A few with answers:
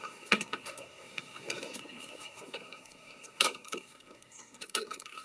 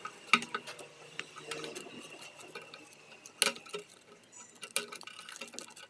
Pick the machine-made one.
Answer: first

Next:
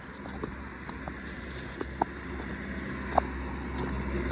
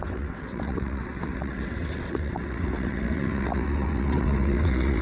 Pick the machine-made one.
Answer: second